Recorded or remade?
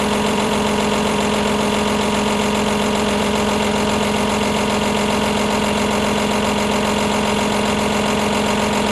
remade